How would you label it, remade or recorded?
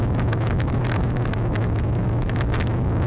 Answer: remade